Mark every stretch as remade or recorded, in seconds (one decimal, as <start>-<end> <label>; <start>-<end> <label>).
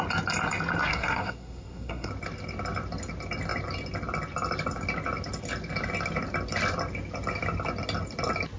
0.0-0.9 recorded; 0.9-2.1 remade; 2.1-8.6 recorded